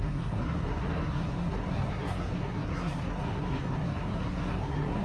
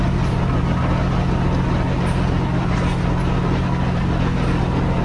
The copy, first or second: first